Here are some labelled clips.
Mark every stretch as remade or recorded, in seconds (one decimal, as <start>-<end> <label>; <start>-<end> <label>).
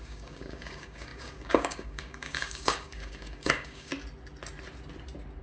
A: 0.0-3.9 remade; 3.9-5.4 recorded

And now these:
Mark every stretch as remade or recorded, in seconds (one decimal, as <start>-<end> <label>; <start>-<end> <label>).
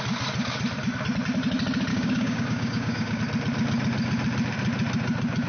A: 0.0-1.9 recorded; 1.9-3.2 remade; 3.2-5.5 recorded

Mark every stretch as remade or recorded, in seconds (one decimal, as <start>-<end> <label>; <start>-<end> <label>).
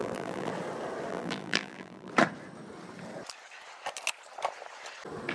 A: 0.0-0.5 remade; 0.5-1.1 recorded; 1.1-2.1 remade; 2.1-5.3 recorded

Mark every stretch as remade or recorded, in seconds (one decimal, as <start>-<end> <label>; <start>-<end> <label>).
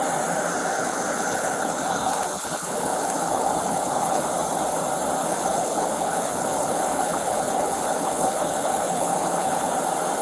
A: 0.0-0.7 recorded; 0.7-4.2 remade; 4.2-5.2 recorded; 5.2-9.7 remade; 9.7-10.2 recorded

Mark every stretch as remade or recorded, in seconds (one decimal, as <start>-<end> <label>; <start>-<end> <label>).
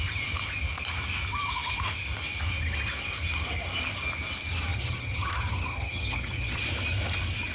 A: 0.0-4.7 recorded; 4.7-6.6 remade; 6.6-7.5 recorded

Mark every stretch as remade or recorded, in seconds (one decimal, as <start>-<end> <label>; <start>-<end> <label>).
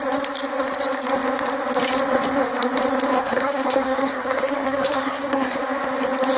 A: 0.0-3.2 recorded; 3.2-5.6 remade; 5.6-6.4 recorded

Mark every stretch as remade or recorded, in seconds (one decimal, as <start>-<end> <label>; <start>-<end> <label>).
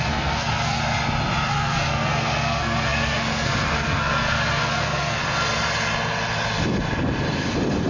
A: 0.0-0.8 remade; 0.8-1.5 recorded; 1.5-5.2 remade; 5.2-7.9 recorded